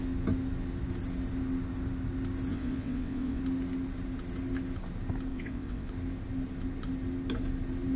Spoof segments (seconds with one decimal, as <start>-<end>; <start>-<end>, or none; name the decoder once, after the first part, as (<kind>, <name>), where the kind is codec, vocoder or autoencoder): 2.5-3.4 (vocoder, WaveNeXt); 5.3-5.9